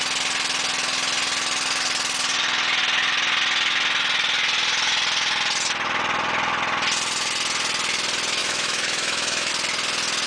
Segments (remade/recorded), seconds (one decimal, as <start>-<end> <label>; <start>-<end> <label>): 0.0-8.4 recorded; 8.4-9.5 remade; 9.5-10.3 recorded